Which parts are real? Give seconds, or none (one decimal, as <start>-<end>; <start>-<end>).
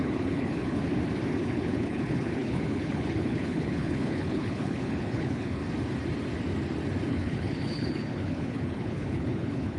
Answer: 0.9-1.4; 5.6-7.1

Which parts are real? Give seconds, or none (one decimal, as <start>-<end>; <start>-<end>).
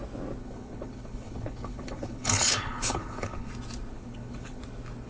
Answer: 0.0-0.4; 3.5-3.9; 4.6-5.1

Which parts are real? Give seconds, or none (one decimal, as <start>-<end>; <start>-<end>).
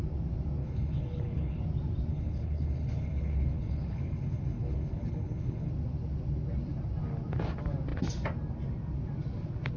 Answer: 0.0-0.6; 1.6-2.1; 5.7-9.8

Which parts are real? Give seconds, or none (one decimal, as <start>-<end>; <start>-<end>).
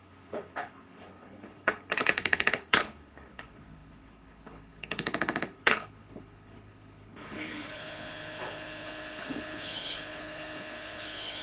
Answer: none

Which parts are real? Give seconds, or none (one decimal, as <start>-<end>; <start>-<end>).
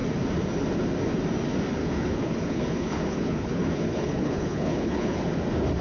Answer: 0.0-1.8; 5.3-5.8